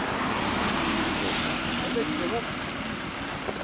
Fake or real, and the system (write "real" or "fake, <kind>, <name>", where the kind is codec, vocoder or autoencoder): real